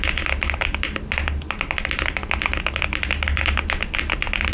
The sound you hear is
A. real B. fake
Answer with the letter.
A